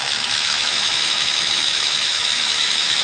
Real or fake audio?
fake